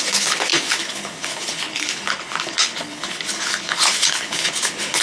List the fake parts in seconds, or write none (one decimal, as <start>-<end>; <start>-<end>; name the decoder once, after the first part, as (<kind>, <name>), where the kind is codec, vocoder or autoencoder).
0.0-5.0 (codec, HILCodec)